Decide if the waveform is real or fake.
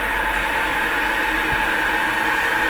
real